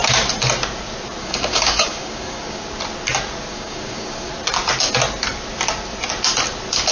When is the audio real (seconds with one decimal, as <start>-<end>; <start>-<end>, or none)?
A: 0.0-1.2; 2.6-3.5; 4.3-6.9